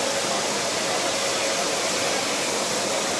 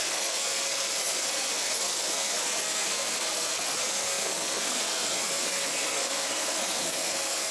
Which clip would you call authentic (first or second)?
first